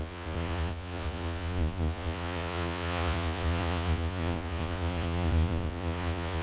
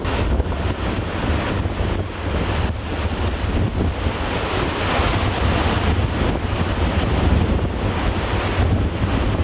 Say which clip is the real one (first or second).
second